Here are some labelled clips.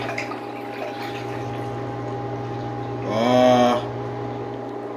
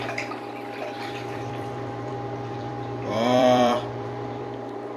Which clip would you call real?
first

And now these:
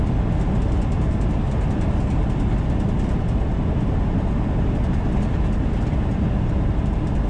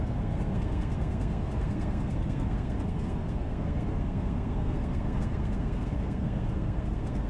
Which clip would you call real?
first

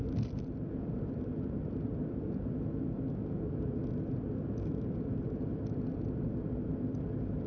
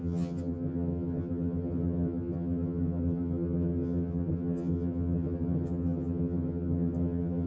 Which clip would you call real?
first